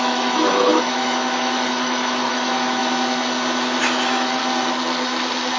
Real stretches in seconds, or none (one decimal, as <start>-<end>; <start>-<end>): 2.8-3.8; 4.4-5.6